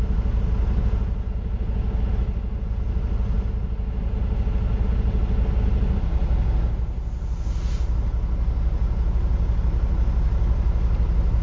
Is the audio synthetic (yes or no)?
no